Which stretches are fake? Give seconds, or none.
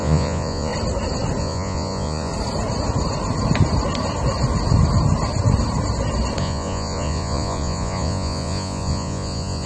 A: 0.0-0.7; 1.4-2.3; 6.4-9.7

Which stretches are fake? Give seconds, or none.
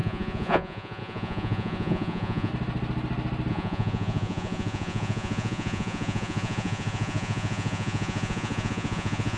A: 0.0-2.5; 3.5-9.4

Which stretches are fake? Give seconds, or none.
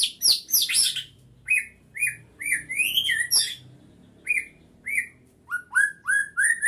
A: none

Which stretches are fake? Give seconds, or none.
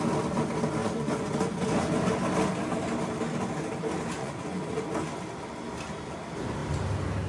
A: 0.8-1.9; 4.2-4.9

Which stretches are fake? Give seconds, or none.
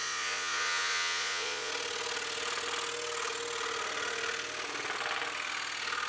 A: 0.0-1.7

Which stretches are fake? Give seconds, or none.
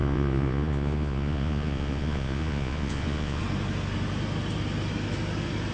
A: 0.0-3.4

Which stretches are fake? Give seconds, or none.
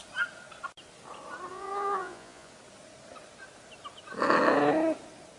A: 1.5-2.5